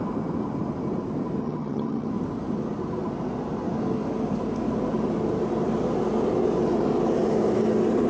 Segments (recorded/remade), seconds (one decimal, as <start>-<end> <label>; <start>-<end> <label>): 0.0-1.4 recorded; 1.4-2.1 remade; 2.1-8.1 recorded